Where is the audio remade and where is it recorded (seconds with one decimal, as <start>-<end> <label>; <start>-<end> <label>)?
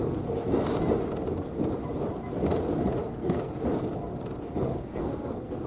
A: 0.0-3.0 recorded; 3.0-3.6 remade; 3.6-4.7 recorded; 4.7-5.7 remade